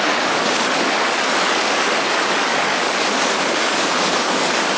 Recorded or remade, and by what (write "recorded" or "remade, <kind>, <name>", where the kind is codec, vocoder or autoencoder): remade, codec, DAC